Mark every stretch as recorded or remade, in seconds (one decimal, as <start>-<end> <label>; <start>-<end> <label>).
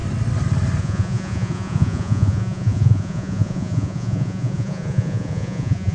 0.0-0.8 recorded; 0.8-5.9 remade